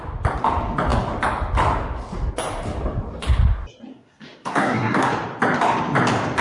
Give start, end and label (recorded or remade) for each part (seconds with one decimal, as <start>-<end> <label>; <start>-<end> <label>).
0.0-3.9 recorded; 3.9-5.1 remade; 5.1-6.4 recorded